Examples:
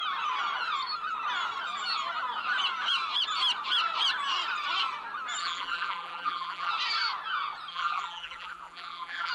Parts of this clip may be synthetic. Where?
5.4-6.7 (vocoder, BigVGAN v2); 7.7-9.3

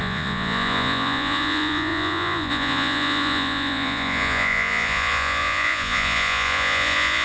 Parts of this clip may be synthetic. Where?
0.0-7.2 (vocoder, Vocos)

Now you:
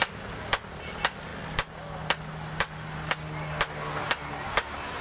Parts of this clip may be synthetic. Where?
none

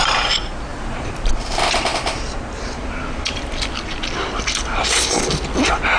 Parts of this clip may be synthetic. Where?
0.7-1.3 (vocoder, BigVGAN v2)